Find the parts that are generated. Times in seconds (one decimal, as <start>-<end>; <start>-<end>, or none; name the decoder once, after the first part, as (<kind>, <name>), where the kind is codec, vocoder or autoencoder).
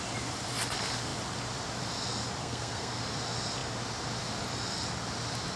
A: 2.4-3.0 (codec, SNAC)